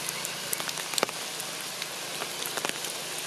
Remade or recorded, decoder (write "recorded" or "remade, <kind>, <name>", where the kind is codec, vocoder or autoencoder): recorded